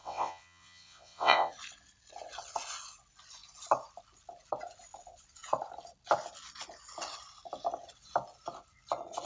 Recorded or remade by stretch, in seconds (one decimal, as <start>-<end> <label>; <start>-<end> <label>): 0.0-1.5 remade; 1.5-9.3 recorded